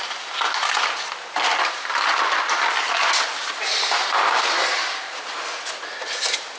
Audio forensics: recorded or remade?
recorded